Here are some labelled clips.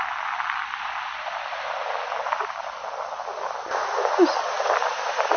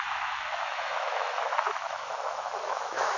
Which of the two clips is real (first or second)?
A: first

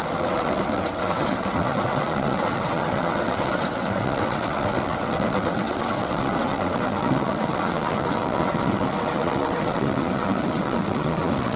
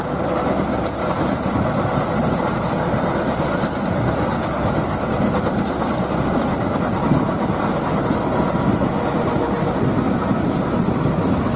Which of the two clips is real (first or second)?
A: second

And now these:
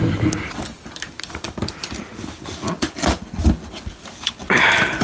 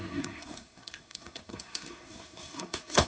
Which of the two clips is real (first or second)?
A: first